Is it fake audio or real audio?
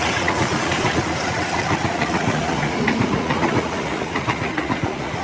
fake